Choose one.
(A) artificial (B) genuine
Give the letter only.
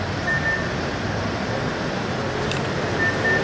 B